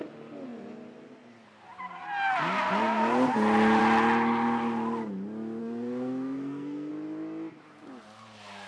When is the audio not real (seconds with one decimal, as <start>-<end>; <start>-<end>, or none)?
5.6-6.9